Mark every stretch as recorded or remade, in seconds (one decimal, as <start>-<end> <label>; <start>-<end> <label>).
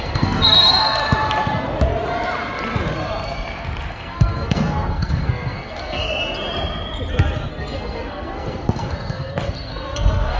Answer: 0.0-1.0 remade; 1.0-3.9 recorded; 3.9-6.2 remade; 6.2-7.5 recorded; 7.5-10.4 remade